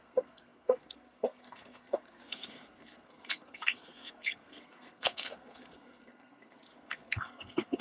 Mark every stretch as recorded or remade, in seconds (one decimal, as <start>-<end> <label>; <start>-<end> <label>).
0.0-7.8 remade

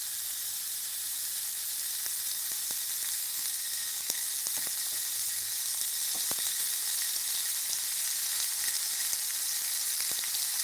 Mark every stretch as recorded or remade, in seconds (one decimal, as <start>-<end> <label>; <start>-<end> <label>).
0.0-3.2 recorded; 3.2-4.3 remade; 4.3-10.6 recorded

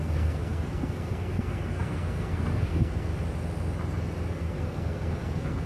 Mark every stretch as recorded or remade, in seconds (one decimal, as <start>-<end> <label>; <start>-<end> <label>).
0.0-3.1 remade; 3.1-4.3 recorded; 4.3-5.7 remade